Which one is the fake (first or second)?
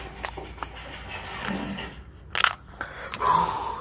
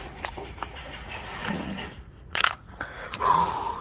second